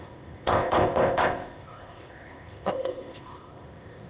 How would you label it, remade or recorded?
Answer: remade